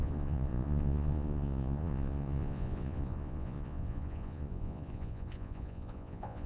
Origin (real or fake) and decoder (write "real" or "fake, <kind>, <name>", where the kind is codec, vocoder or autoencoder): fake, vocoder, Vocos